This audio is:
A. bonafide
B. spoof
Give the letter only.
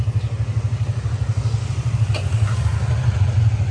A